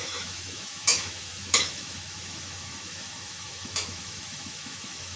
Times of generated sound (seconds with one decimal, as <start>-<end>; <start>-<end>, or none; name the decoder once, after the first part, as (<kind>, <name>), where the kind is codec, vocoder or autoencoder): 0.0-5.2 (autoencoder, DAC-VAE)